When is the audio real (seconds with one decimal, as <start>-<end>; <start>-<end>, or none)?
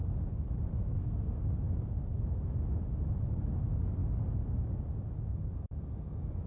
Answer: 0.0-0.7; 1.4-6.5